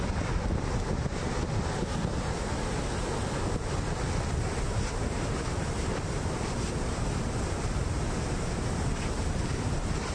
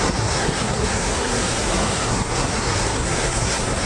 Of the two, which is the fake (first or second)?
second